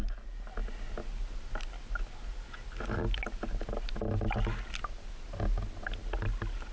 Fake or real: real